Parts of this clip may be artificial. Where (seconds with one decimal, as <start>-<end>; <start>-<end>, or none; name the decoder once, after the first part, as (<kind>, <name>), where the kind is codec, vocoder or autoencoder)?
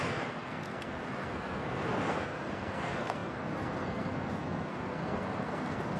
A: 0.0-6.0 (codec, SNAC)